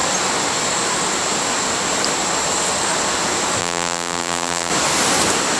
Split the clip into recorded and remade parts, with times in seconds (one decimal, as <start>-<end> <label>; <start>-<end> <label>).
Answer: 0.0-3.6 recorded; 3.6-4.7 remade; 4.7-5.6 recorded